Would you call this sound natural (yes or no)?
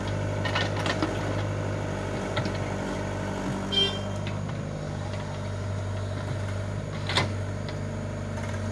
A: yes